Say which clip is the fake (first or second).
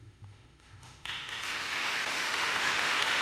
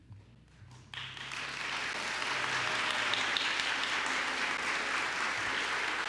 first